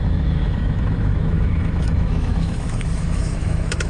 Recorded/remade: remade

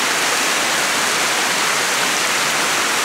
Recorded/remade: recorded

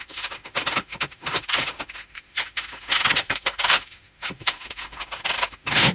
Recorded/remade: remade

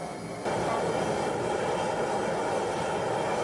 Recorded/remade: recorded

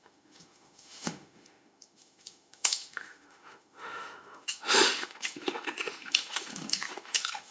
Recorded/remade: remade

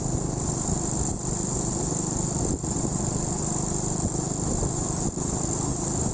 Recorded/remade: recorded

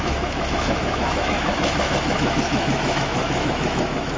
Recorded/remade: remade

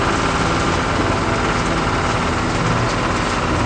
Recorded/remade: recorded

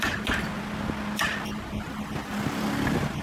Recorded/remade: recorded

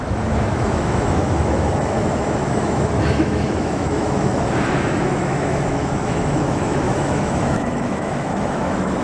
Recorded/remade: remade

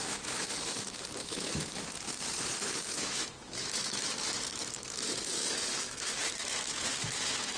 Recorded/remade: remade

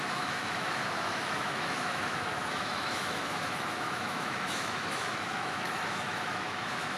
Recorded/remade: remade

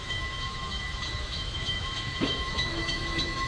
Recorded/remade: remade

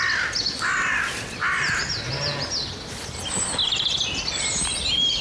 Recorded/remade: recorded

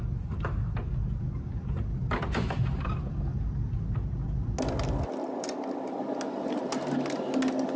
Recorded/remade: recorded